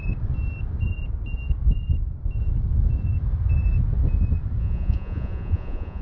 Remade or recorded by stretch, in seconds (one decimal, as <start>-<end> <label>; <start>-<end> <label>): 0.0-4.6 recorded; 4.6-6.0 remade